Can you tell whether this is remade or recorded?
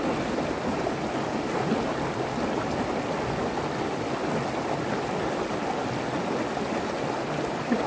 recorded